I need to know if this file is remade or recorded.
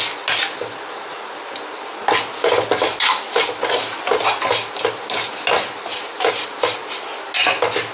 recorded